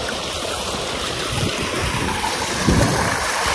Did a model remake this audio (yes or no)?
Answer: no